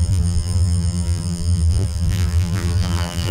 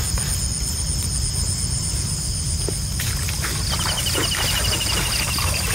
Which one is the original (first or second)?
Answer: second